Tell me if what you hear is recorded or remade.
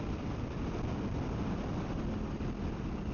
recorded